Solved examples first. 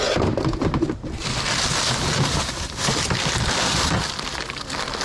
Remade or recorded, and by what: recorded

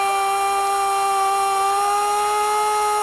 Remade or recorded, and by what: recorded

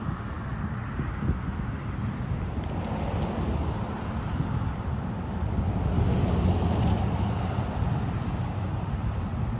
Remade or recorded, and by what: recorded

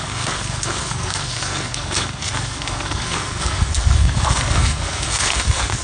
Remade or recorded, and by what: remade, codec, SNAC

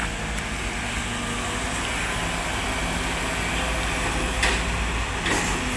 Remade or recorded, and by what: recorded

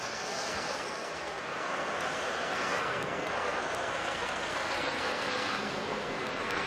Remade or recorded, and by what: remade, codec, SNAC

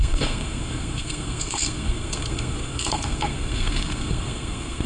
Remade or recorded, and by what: remade, codec, SNAC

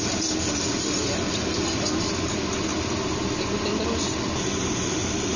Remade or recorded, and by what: recorded